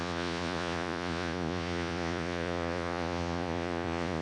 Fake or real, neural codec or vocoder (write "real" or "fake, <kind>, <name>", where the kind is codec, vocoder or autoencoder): fake, vocoder, Vocos